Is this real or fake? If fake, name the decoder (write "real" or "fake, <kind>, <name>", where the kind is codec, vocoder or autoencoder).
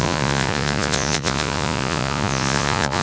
fake, vocoder, Vocos